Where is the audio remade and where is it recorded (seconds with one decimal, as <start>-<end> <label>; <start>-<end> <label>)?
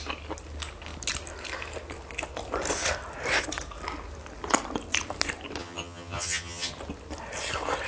0.0-5.6 recorded; 5.6-6.7 remade; 6.7-7.9 recorded